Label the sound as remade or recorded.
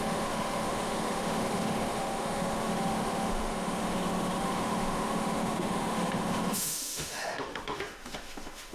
remade